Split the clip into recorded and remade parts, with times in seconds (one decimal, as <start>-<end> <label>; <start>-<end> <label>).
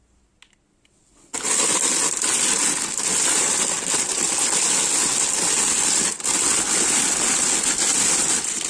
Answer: 0.0-3.1 recorded; 3.1-3.6 remade; 3.6-8.7 recorded